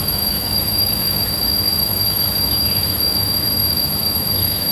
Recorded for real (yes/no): no